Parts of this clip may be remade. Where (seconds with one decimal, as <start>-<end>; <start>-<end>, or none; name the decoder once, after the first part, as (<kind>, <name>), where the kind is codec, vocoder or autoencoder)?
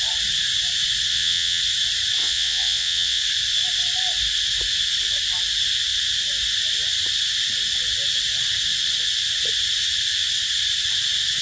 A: 1.1-1.6 (vocoder, WaveNeXt); 2.2-3.2